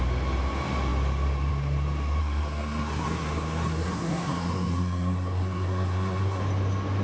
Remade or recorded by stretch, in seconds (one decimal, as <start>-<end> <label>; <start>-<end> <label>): 0.0-2.2 recorded; 2.2-6.4 remade; 6.4-7.0 recorded